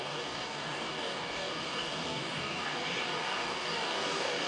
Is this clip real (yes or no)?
no